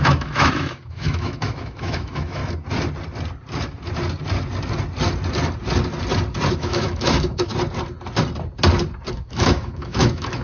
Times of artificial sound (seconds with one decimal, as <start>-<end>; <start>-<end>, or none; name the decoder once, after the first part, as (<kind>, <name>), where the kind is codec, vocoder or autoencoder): 0.0-2.4 (autoencoder, DAC-VAE); 6.5-7.5; 9.1-10.4